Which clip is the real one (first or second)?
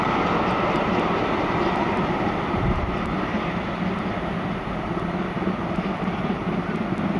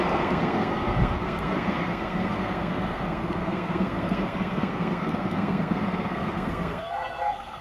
first